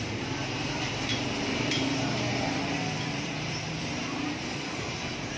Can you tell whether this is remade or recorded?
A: remade